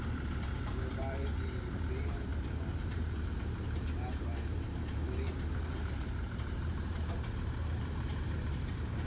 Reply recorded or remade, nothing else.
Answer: remade